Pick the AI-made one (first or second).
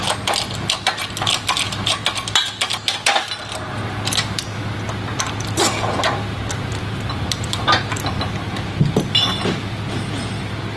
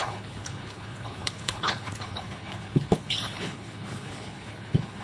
second